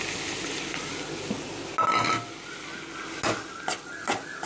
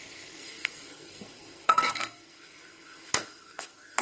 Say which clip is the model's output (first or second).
second